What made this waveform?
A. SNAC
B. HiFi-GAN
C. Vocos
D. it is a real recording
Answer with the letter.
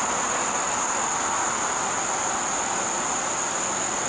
D